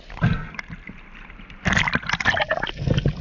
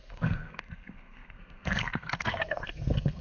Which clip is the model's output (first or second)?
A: second